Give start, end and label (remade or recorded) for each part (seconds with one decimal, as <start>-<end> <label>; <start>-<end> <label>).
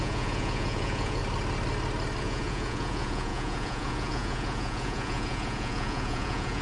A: 0.0-1.2 remade; 1.2-2.2 recorded; 2.2-6.6 remade